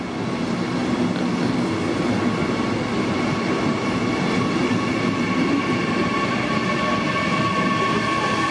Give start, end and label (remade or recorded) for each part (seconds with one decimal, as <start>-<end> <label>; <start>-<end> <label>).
0.0-8.5 recorded